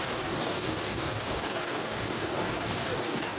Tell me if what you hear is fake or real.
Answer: fake